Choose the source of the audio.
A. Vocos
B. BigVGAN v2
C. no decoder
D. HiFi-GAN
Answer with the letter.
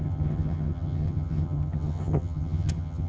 D